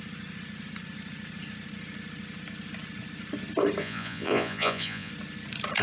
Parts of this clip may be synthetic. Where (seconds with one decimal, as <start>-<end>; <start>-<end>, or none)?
3.8-5.1